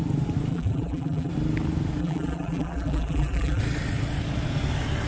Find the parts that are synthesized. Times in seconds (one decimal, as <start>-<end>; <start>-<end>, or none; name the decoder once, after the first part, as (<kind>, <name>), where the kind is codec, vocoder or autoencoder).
0.5-1.3 (vocoder, BigVGAN v2); 2.0-3.6